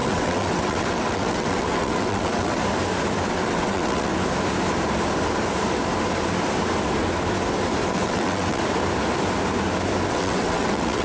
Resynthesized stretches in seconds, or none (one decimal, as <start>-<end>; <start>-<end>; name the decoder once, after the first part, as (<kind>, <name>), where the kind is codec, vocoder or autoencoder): 0.0-2.6 (vocoder, WaveNeXt); 3.3-4.1; 7.9-8.6; 10.1-11.0